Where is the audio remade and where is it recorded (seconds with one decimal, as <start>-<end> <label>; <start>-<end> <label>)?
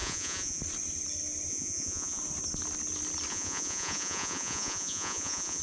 0.0-0.6 remade; 0.6-1.5 recorded; 1.5-2.2 remade; 2.2-3.3 recorded; 3.3-5.6 remade